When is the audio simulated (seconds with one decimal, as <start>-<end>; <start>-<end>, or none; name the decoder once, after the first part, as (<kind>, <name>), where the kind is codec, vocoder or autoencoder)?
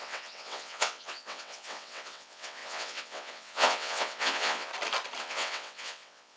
0.0-4.7 (vocoder, WaveNeXt); 5.2-6.4